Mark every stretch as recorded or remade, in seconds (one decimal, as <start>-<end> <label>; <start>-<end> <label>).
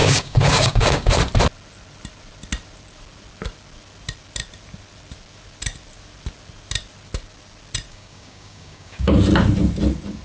0.0-1.1 remade; 1.1-7.9 recorded; 7.9-9.1 remade; 9.1-10.2 recorded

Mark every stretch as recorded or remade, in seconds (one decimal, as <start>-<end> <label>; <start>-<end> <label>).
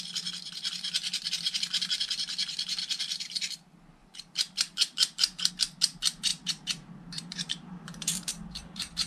0.0-4.0 recorded; 4.0-5.5 remade; 5.5-6.3 recorded; 6.3-9.1 remade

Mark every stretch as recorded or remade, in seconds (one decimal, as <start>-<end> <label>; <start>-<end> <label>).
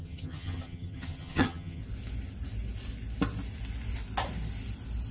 0.0-1.8 remade; 1.8-5.1 recorded